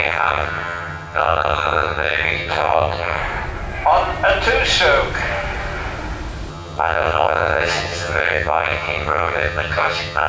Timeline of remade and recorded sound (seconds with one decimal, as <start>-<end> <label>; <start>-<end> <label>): 0.0-3.2 remade; 3.2-6.5 recorded; 6.5-10.3 remade